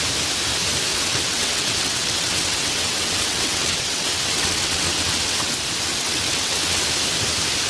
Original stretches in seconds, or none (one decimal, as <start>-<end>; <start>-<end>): 0.0-0.9; 5.5-5.9; 6.8-7.7